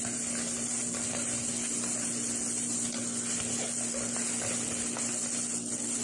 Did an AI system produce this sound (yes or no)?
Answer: no